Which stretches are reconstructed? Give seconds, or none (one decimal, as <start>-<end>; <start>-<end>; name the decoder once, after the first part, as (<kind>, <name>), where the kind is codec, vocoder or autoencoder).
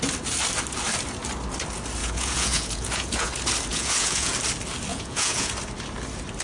2.0-3.3 (vocoder, Vocos); 3.7-4.3; 4.9-5.5